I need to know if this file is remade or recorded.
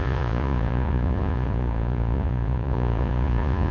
remade